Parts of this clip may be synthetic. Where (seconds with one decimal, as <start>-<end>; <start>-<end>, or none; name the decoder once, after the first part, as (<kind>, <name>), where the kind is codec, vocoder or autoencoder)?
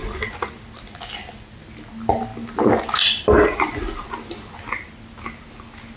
none